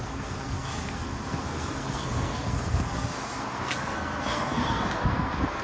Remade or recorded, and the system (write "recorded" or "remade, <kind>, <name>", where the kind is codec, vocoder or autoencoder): remade, codec, SNAC